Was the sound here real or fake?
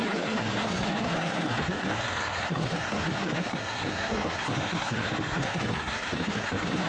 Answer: fake